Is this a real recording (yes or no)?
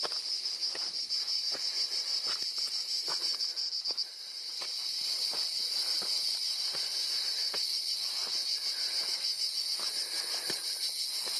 yes